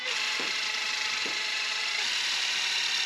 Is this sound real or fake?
fake